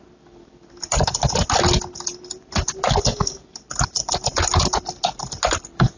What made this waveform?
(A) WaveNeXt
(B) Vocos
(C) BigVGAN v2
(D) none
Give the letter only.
D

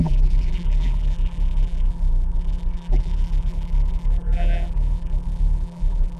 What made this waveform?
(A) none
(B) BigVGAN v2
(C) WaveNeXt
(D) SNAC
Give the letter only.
B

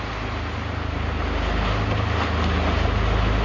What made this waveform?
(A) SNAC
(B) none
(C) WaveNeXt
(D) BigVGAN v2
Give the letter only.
B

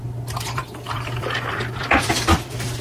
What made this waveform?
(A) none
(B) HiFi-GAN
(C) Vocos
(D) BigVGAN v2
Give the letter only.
D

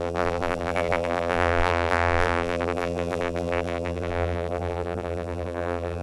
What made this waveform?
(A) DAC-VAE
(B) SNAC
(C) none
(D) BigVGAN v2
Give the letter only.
D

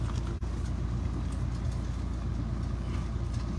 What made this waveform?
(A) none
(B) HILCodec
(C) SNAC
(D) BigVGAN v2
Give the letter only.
A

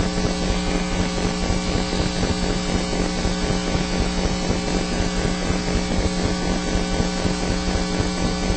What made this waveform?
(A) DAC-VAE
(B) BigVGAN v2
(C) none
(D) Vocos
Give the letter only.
C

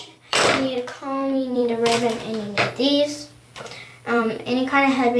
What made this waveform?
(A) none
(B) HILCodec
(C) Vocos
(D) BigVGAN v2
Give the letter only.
D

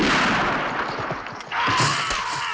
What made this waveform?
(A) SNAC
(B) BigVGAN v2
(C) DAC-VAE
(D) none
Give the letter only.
D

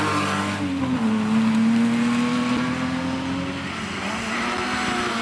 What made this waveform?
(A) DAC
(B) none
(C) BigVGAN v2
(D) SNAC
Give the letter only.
B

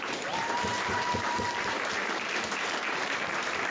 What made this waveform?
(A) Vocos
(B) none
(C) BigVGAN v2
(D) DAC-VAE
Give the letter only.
C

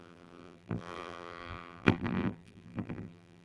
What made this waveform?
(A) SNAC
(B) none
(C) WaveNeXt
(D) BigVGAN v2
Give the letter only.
D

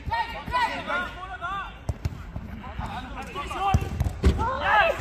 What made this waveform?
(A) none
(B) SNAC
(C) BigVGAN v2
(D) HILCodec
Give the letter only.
A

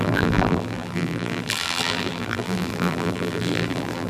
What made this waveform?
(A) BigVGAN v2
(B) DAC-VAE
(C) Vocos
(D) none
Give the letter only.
A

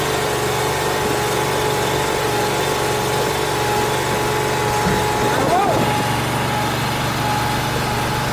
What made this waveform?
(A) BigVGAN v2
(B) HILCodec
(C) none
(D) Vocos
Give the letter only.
C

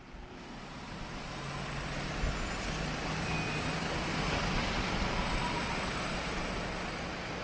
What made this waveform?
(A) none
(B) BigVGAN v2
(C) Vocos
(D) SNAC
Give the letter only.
A